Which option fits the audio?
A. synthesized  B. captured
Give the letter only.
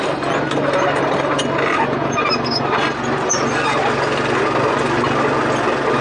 B